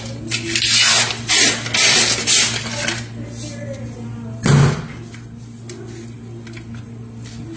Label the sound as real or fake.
real